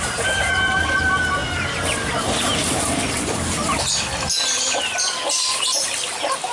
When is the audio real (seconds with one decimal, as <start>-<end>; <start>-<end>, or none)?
0.0-6.5